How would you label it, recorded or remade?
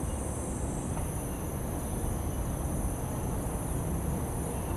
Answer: recorded